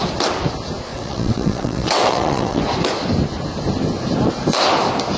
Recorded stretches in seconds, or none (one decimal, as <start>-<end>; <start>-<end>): 0.0-0.9; 2.6-5.2